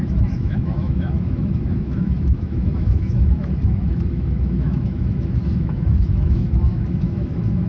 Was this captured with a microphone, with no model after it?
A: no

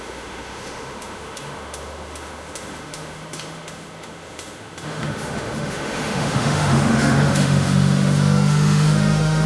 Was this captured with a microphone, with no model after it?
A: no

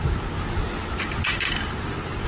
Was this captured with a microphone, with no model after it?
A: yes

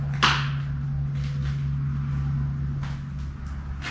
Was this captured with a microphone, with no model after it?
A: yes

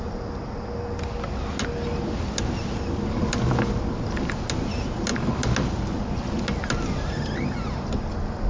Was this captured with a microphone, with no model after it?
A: yes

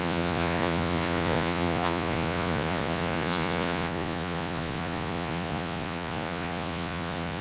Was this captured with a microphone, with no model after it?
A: no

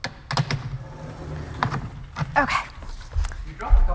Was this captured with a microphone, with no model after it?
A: yes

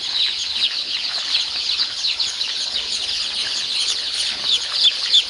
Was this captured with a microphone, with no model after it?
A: no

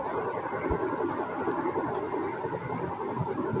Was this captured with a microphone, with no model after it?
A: yes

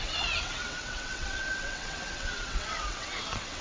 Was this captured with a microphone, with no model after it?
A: no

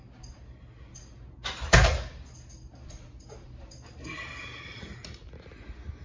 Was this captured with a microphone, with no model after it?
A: yes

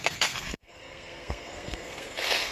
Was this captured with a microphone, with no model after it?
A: no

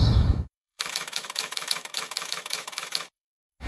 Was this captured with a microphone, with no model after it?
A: no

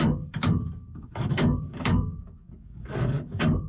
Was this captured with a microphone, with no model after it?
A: no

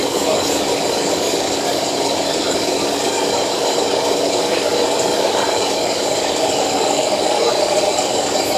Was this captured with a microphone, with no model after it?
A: no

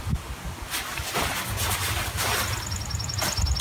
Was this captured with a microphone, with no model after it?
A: yes